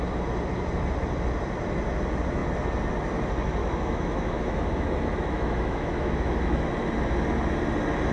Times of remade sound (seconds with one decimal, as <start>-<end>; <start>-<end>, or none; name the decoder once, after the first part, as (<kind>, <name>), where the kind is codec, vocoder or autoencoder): 3.6-6.7 (autoencoder, DAC-VAE)